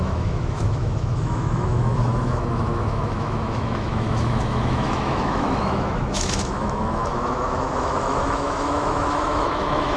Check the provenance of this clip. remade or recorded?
remade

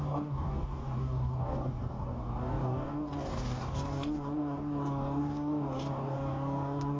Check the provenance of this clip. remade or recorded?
remade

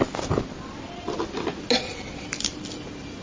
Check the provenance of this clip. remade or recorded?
recorded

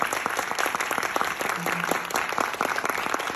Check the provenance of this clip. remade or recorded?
recorded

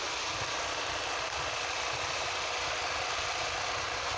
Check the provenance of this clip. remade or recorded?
remade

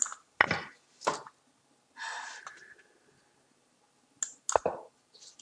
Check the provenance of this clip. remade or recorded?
recorded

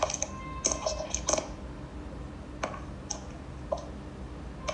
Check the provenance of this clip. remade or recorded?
recorded